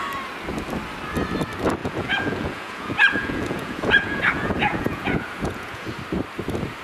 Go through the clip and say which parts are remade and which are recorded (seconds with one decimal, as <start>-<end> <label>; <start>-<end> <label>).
0.0-1.8 recorded; 1.8-5.9 remade; 5.9-6.8 recorded